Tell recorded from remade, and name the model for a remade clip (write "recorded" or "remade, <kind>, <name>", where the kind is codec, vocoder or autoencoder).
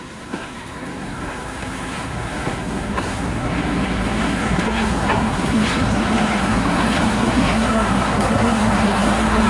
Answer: remade, codec, SNAC